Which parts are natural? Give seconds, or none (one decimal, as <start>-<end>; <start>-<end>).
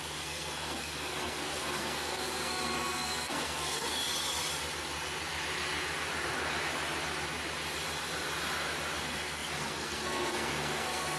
4.0-9.0